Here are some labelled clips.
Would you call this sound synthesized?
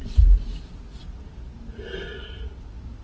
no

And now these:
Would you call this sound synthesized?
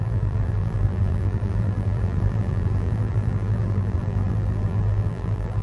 yes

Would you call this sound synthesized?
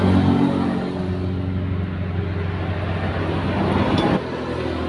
no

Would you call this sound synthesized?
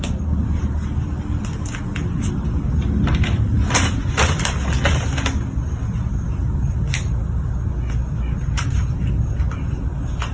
no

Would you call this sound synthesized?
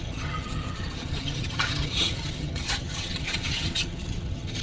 yes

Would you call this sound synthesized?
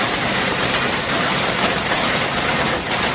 yes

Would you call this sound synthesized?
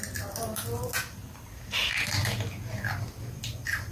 no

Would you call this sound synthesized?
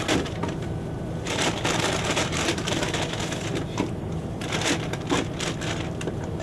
yes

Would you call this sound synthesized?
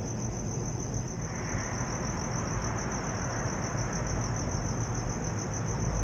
no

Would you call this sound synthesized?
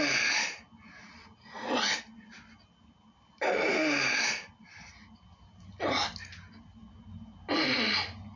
no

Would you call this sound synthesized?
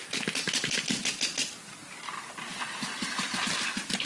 no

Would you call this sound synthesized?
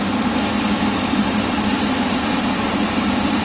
no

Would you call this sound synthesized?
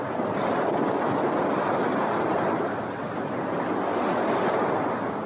no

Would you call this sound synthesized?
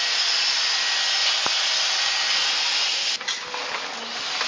no